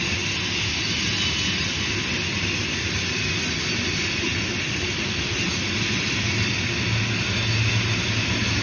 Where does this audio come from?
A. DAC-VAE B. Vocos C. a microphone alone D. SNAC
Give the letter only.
C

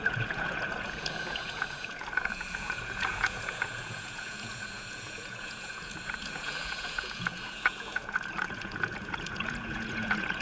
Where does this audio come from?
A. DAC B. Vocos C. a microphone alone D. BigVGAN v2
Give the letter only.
B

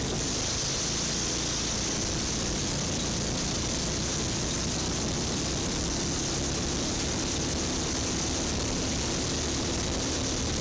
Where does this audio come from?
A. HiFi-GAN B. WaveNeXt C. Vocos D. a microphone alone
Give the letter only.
D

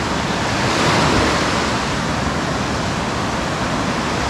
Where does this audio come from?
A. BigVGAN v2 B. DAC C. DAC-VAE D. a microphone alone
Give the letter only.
A